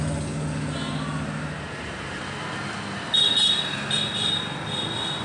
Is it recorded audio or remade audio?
recorded